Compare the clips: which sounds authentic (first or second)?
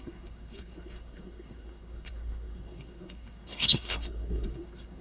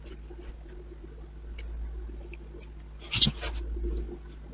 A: second